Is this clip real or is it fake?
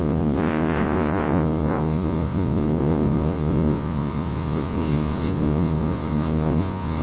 fake